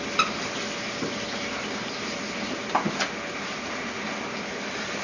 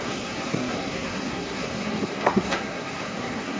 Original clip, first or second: first